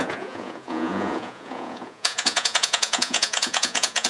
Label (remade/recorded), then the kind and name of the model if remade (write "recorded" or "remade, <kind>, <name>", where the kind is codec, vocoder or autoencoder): remade, vocoder, Vocos